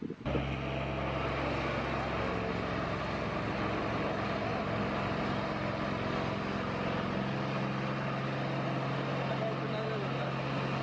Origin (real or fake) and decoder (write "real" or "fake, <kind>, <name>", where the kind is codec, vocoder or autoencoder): real